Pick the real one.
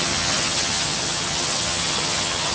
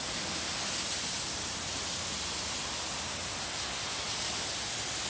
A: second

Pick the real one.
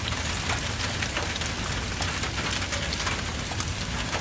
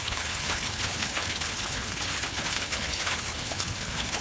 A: first